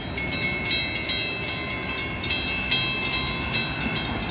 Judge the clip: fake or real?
real